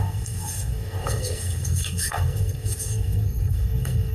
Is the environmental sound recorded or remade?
remade